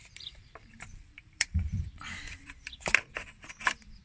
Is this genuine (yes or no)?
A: no